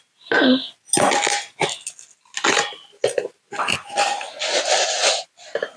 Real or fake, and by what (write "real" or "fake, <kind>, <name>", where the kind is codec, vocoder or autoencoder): real